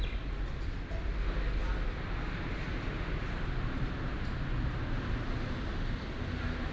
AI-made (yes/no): no